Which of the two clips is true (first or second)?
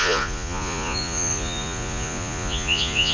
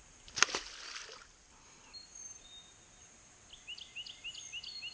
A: second